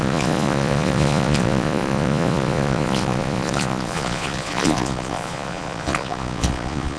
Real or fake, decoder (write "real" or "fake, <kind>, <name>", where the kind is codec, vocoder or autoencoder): fake, vocoder, Vocos